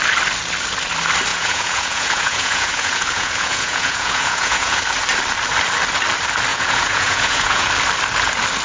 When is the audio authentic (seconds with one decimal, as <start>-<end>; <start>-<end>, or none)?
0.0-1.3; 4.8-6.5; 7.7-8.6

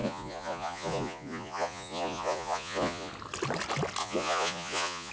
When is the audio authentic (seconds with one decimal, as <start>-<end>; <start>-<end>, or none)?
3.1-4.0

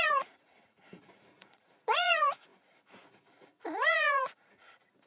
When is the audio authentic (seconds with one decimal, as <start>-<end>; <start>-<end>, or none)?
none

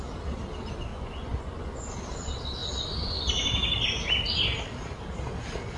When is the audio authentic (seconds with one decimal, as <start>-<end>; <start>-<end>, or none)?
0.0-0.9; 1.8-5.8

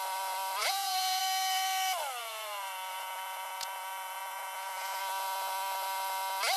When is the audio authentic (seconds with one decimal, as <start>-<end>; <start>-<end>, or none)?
0.0-0.6; 1.2-2.2; 5.0-6.6